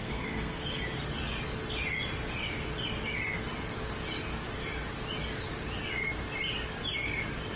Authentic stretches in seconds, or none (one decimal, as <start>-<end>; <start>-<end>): 0.8-7.6